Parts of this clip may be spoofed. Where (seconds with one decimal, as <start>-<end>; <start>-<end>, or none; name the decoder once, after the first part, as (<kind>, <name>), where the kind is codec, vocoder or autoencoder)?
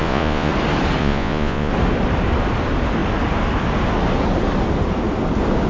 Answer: 0.0-0.5 (vocoder, Vocos); 1.0-1.7